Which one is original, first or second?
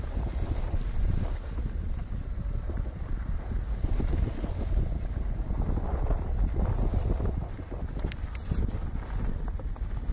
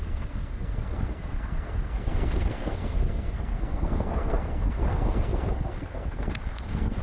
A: first